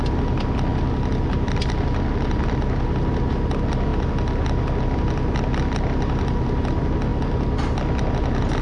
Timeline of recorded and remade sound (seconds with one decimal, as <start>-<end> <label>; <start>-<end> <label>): 0.0-8.6 recorded